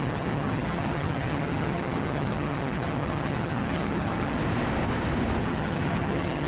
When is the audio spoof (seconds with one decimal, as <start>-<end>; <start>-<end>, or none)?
0.0-4.4; 5.4-6.5